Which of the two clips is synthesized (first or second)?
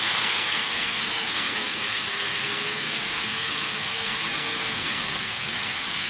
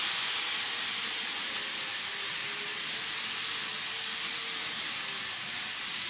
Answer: first